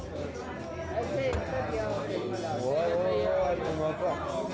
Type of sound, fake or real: real